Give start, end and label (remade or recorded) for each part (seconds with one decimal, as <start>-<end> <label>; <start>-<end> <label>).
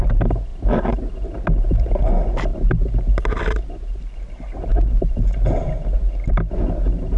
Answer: 0.0-7.2 recorded